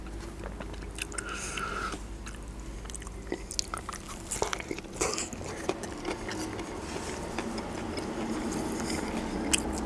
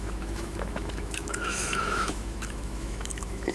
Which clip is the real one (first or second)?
first